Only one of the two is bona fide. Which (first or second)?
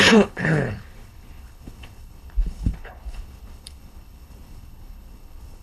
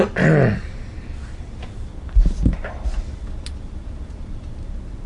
second